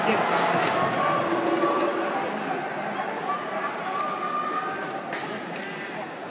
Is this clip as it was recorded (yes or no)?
yes